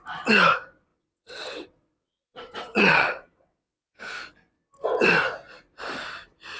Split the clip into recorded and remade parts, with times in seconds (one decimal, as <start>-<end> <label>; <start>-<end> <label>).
0.0-0.9 recorded; 0.9-3.8 remade; 3.8-6.6 recorded